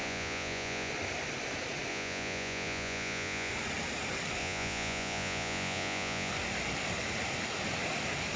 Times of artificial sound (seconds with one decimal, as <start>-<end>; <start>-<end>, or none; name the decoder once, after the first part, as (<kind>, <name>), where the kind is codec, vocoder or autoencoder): 0.0-0.9 (vocoder, Vocos); 1.9-3.5; 4.4-6.3